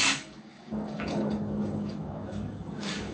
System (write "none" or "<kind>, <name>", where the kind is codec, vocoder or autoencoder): codec, DAC